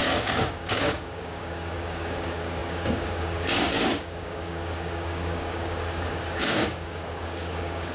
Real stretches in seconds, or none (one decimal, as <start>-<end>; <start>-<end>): none